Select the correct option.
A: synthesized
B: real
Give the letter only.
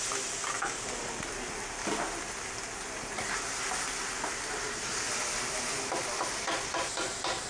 B